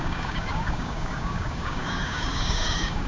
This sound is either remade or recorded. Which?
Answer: remade